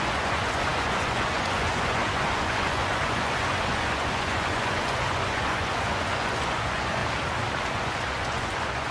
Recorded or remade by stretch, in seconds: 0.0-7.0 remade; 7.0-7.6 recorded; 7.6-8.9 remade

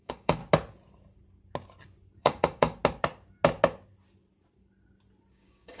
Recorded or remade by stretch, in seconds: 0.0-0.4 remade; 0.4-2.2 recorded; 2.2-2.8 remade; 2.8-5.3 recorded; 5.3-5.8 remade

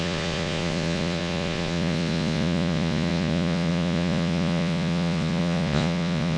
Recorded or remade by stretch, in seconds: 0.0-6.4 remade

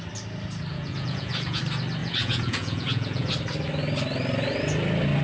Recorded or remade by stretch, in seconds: 0.0-0.7 recorded; 0.7-1.6 remade; 1.6-2.0 recorded; 2.0-3.3 remade; 3.3-5.2 recorded